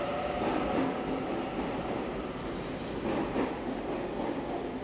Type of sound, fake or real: real